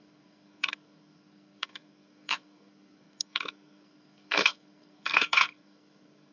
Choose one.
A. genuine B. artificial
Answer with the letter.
B